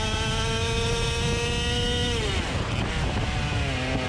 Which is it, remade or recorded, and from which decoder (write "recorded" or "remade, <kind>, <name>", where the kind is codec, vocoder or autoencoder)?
recorded